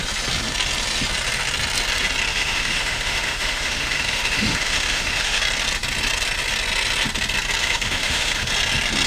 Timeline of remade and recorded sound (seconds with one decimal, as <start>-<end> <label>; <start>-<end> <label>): 0.0-2.3 recorded; 2.3-5.4 remade; 5.4-7.6 recorded; 7.6-8.5 remade; 8.5-9.1 recorded